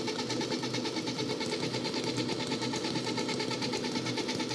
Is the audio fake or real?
real